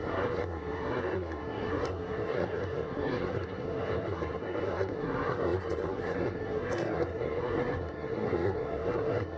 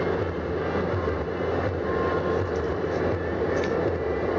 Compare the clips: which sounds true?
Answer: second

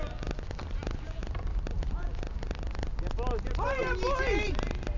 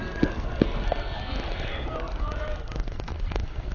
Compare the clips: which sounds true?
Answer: first